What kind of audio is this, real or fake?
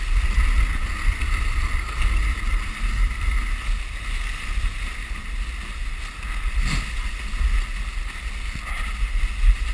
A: real